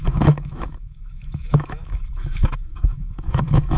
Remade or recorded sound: remade